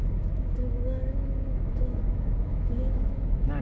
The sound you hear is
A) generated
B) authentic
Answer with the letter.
A